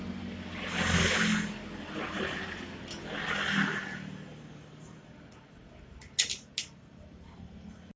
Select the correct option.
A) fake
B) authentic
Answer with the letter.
B